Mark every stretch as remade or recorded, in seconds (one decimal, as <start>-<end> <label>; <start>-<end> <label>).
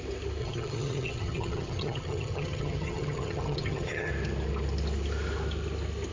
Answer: 0.0-0.4 recorded; 0.4-4.1 remade; 4.1-6.1 recorded